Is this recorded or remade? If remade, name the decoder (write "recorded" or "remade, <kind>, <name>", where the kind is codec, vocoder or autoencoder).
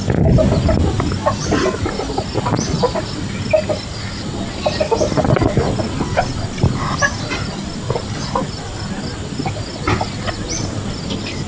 recorded